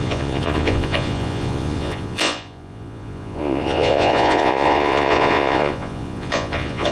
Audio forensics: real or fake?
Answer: fake